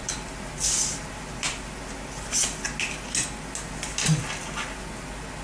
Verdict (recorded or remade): recorded